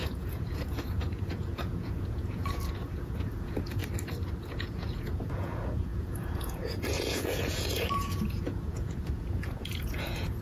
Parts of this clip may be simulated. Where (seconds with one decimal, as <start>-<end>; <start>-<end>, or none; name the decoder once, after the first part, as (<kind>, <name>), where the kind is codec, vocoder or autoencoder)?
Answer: 0.0-3.8 (vocoder, Vocos); 4.4-10.4